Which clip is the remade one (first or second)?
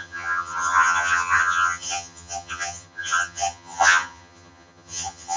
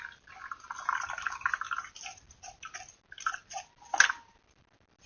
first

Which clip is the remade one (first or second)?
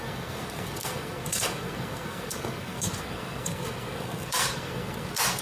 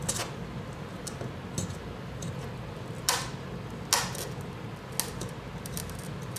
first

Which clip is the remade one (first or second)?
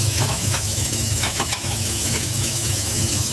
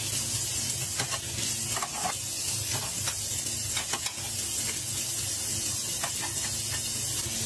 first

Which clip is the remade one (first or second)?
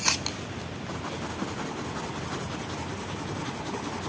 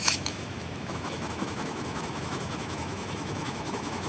second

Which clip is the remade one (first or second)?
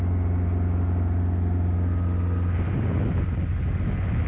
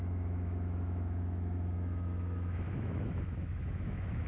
second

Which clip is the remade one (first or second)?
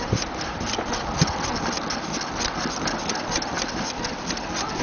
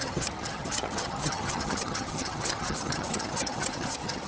second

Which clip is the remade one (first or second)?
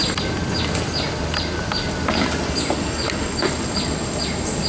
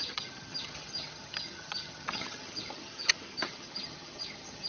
second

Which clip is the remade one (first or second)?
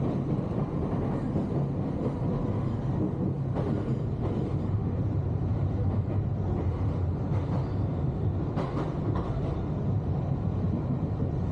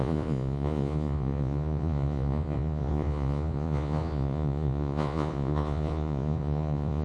second